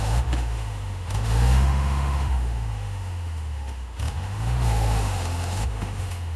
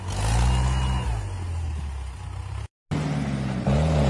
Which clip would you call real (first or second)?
second